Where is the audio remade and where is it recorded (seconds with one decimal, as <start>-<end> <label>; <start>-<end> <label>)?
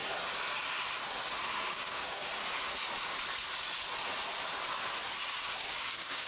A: 0.0-1.7 recorded; 1.7-2.3 remade; 2.3-5.3 recorded; 5.3-6.3 remade